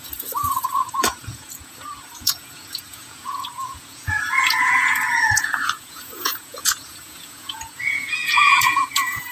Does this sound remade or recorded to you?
remade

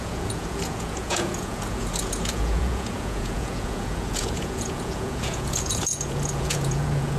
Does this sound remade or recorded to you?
remade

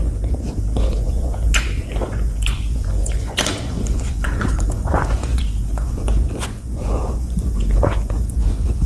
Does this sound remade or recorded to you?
remade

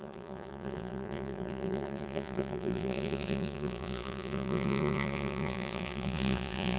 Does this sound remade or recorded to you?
remade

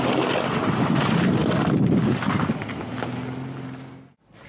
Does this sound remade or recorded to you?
recorded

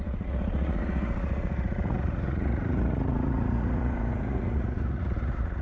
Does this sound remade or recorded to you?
remade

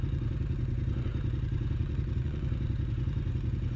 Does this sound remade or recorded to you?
remade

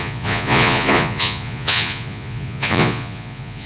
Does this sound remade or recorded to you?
remade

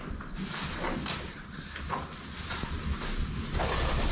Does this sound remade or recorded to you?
recorded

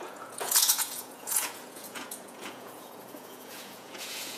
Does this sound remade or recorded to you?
remade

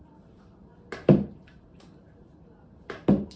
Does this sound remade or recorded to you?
recorded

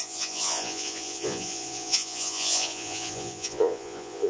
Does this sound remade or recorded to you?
remade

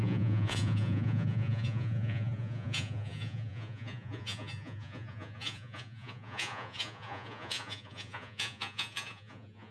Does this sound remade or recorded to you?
remade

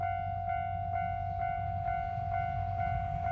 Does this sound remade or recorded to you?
recorded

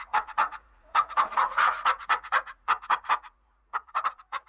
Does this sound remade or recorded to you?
remade